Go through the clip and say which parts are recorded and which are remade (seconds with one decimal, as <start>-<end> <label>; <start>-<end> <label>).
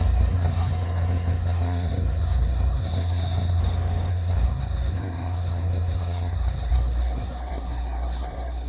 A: 0.0-3.6 remade; 3.6-4.1 recorded; 4.1-8.7 remade